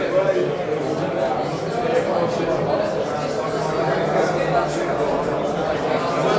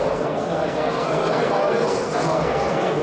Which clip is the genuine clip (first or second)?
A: first